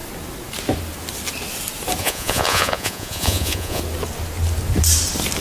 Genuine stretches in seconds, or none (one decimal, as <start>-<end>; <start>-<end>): 0.0-2.0; 3.8-5.4